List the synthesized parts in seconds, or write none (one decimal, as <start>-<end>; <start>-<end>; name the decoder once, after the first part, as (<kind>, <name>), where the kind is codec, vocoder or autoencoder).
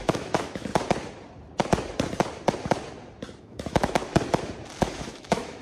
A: 0.0-0.7 (autoencoder, DAC-VAE); 3.4-4.0; 4.8-5.6